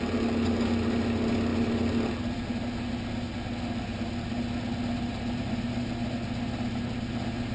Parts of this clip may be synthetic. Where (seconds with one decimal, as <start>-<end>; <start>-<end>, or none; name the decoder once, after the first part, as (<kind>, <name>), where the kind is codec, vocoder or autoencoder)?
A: none